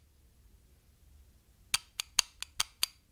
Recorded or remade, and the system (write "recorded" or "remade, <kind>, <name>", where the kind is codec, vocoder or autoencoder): recorded